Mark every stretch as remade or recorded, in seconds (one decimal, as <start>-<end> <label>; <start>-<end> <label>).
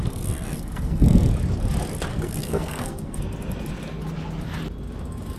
0.0-1.3 remade; 1.3-2.1 recorded; 2.1-3.2 remade; 3.2-5.4 recorded